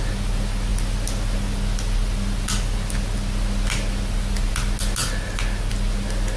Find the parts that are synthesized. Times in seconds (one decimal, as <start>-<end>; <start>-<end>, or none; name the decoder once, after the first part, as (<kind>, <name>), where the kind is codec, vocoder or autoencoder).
none